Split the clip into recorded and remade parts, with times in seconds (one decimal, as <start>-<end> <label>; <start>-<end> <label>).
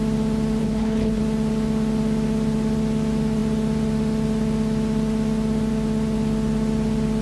0.0-0.6 recorded; 0.6-1.2 remade; 1.2-7.2 recorded